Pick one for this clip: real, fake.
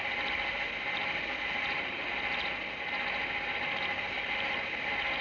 real